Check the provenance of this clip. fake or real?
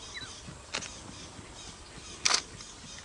real